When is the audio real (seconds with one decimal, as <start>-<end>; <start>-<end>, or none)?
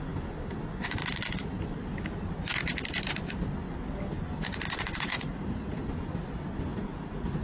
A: 0.0-5.1; 5.8-6.7